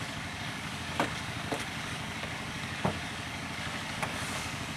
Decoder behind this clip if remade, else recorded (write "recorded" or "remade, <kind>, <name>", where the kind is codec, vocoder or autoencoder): remade, codec, DAC